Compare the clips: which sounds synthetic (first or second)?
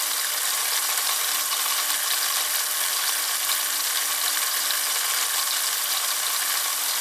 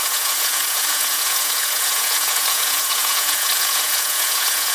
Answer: second